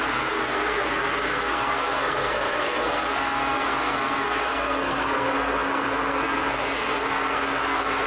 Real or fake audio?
fake